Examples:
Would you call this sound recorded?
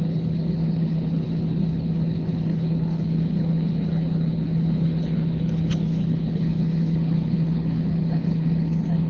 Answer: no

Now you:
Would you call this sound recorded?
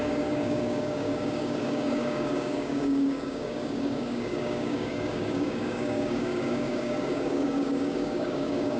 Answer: no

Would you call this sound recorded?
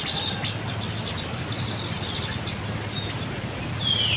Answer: yes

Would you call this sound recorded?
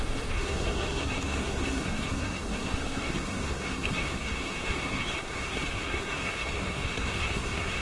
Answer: no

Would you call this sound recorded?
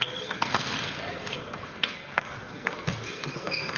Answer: no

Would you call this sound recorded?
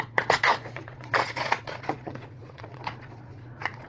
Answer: no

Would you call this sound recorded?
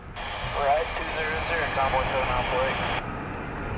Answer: yes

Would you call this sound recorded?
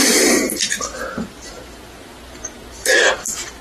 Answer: yes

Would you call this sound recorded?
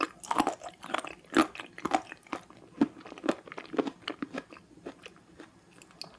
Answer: yes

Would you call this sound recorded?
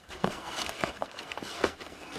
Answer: no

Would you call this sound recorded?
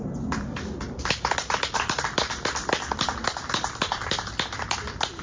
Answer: no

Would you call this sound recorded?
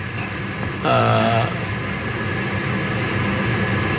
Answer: yes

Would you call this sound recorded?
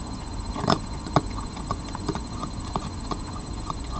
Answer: no